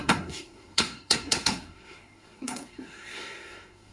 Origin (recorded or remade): remade